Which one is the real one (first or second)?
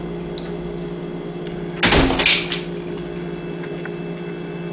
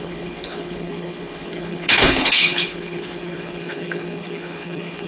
first